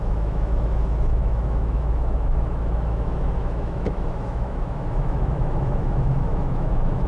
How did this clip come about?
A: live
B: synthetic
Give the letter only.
B